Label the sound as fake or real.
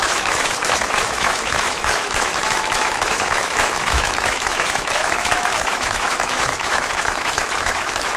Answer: fake